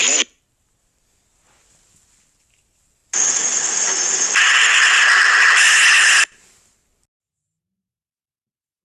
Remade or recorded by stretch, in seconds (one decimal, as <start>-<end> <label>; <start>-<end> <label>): 0.0-3.0 remade; 3.0-7.6 recorded; 7.6-8.8 remade